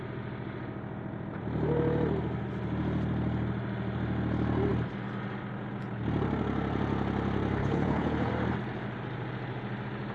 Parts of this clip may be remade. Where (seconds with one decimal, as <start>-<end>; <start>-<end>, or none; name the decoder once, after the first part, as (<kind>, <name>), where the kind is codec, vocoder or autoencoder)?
7.6-8.3 (codec, HILCodec)